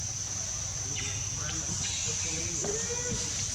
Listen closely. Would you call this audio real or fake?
real